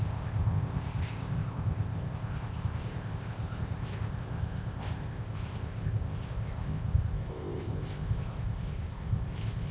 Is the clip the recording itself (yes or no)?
no